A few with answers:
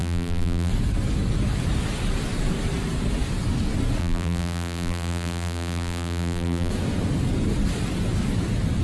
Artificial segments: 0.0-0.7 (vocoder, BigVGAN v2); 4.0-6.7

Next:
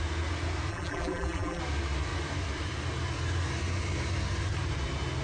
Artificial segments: 0.7-1.6 (vocoder, BigVGAN v2)

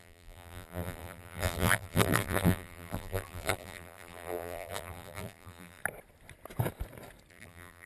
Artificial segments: 0.0-5.8 (vocoder, BigVGAN v2); 7.3-7.9

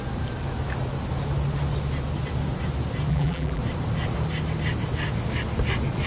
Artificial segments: 3.1-3.6 (vocoder, BigVGAN v2)

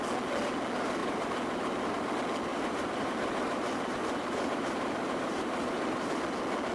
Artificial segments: 1.0-2.1 (vocoder, BigVGAN v2); 2.5-6.2

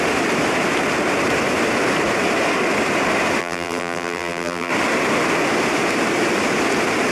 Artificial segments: 3.4-4.7 (vocoder, BigVGAN v2)

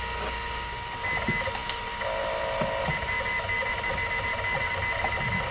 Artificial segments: none